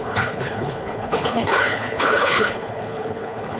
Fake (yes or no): yes